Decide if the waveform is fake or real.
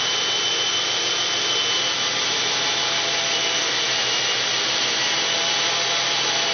real